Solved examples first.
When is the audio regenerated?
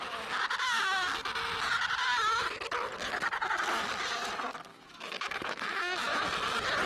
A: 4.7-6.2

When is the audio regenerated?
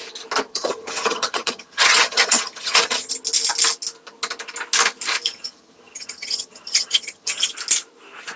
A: 0.5-3.1; 5.3-7.5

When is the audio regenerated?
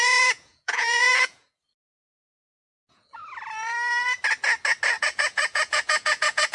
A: 0.0-3.2; 5.0-6.5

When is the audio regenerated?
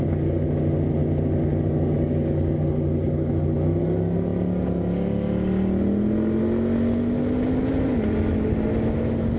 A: none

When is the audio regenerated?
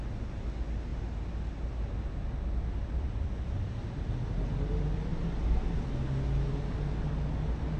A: none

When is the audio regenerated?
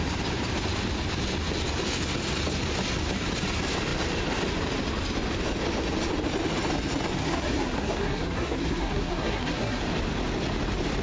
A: 7.2-9.8